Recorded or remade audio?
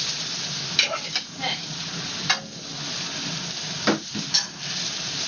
recorded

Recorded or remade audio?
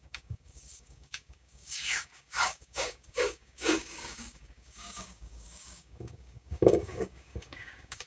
remade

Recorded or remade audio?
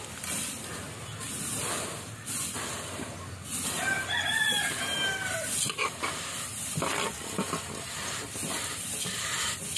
recorded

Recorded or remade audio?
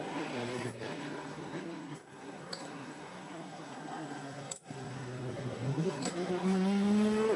remade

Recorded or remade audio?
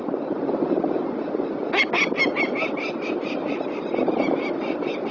recorded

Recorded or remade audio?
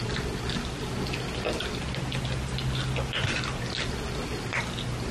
recorded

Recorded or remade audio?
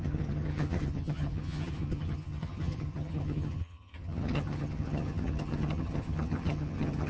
remade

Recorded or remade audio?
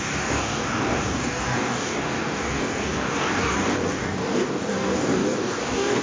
remade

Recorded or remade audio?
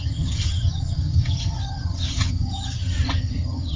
remade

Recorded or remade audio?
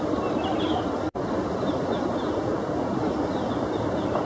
recorded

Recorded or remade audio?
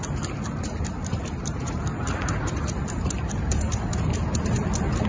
remade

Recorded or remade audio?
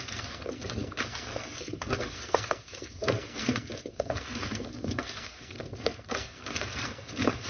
remade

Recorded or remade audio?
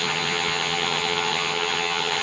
remade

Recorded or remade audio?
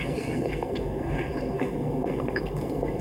remade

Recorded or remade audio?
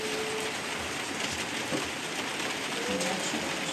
recorded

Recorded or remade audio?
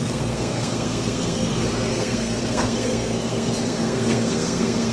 remade